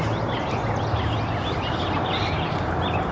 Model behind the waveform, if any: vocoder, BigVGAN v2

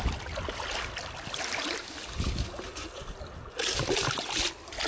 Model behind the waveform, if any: none